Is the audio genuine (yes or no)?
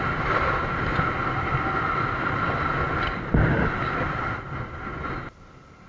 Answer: yes